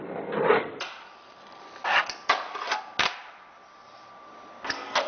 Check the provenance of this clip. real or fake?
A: real